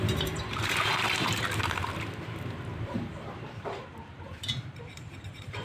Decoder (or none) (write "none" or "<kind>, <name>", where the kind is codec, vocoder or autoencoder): vocoder, BigVGAN v2